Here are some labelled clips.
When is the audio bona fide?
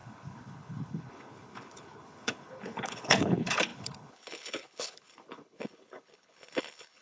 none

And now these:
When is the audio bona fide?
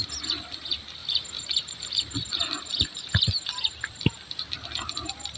0.0-5.4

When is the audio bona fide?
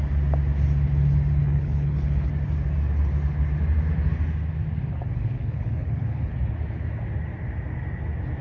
0.0-1.4; 2.3-5.0; 6.3-8.4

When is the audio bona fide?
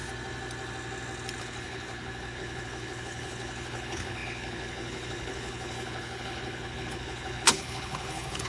0.0-1.4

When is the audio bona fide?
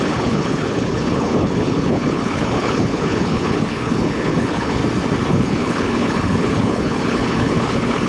4.8-5.3